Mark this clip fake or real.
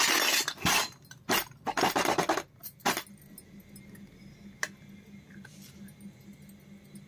real